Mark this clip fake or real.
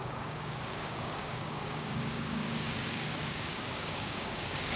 fake